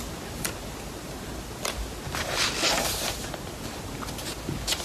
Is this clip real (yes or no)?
yes